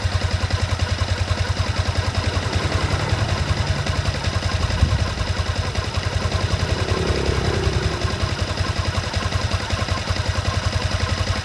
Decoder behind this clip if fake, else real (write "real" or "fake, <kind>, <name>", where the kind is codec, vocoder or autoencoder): real